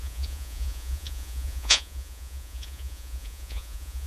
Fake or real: fake